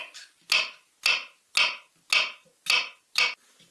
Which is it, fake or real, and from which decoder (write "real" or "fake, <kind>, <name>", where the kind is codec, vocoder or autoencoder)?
real